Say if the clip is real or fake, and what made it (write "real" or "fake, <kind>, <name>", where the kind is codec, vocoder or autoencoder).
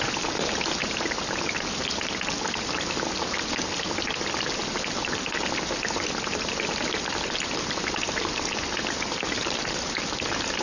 real